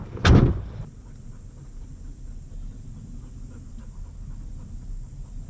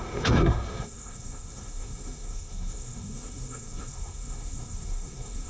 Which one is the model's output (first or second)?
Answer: second